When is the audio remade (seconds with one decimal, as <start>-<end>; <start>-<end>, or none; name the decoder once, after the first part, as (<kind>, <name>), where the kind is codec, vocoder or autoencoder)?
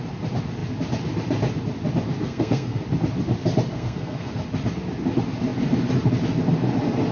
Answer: 2.2-2.8 (codec, SNAC); 3.7-4.3